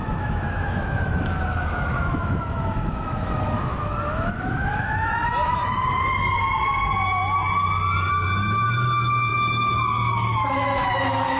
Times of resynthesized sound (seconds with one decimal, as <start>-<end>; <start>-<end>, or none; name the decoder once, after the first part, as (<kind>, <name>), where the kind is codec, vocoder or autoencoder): 0.0-5.6 (autoencoder, DAC-VAE); 8.1-11.4